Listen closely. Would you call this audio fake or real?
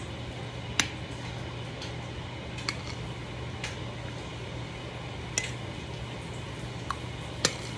real